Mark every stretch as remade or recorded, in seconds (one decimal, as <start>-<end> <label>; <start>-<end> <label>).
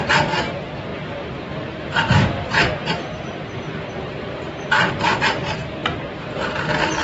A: 0.0-0.9 recorded; 0.9-4.9 remade; 4.9-7.0 recorded